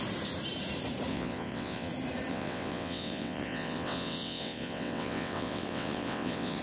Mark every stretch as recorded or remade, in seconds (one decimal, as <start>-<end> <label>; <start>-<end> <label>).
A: 0.0-1.1 recorded; 1.1-1.9 remade; 1.9-2.3 recorded; 2.3-6.6 remade